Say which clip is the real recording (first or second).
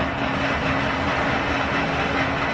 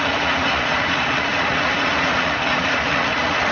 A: first